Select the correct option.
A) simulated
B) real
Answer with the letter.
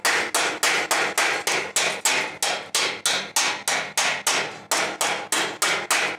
B